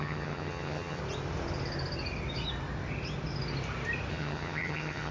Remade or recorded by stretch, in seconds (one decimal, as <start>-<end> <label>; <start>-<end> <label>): 0.0-1.0 remade; 1.0-4.1 recorded; 4.1-5.1 remade